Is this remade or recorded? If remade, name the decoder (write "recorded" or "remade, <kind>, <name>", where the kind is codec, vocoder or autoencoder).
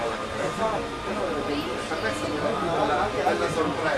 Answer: recorded